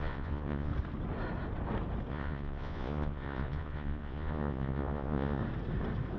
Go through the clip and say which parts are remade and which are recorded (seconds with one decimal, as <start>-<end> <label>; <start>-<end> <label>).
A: 0.0-0.7 remade; 0.7-2.1 recorded; 2.1-5.4 remade; 5.4-6.2 recorded